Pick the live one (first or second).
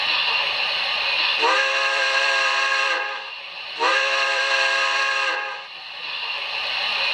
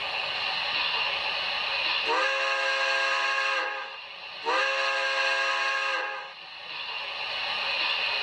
second